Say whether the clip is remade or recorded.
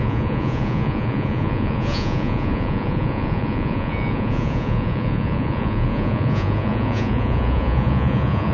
remade